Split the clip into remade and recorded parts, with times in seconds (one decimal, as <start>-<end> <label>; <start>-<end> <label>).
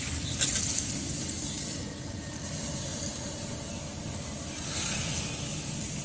0.0-6.0 recorded